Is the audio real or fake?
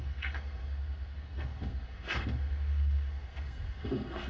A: fake